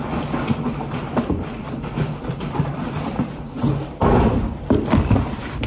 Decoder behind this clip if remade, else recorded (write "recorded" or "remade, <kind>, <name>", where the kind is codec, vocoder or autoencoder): remade, vocoder, BigVGAN v2